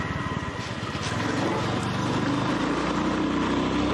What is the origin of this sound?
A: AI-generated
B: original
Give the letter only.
B